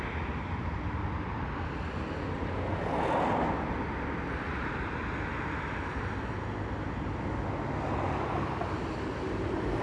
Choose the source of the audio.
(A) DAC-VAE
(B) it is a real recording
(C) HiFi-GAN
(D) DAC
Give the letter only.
B